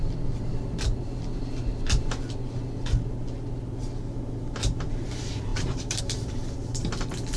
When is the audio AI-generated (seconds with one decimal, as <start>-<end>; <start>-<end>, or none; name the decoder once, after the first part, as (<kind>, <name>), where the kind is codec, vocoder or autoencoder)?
4.4-7.4 (vocoder, BigVGAN v2)